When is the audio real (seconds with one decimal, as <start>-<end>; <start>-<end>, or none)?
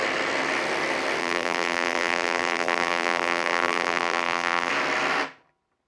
0.0-1.2; 4.7-5.9